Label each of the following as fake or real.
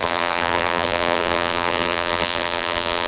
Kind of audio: fake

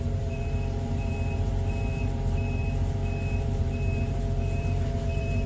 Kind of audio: fake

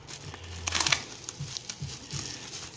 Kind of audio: real